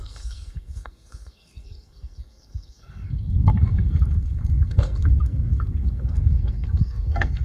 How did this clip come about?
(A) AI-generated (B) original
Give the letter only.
A